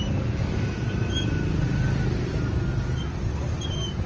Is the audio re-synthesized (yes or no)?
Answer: no